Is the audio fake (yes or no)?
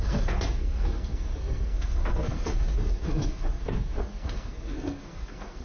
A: yes